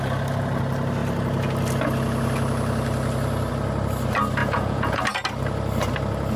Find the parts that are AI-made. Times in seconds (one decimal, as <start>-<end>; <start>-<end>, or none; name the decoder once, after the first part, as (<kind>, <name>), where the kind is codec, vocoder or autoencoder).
4.4-5.0 (vocoder, Vocos)